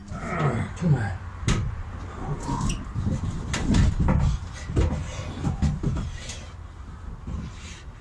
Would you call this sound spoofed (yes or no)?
no